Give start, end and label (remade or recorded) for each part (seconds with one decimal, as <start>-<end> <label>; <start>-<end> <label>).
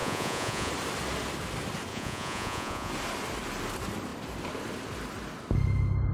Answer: 0.0-0.7 remade; 0.7-1.9 recorded; 1.9-2.9 remade; 2.9-6.1 recorded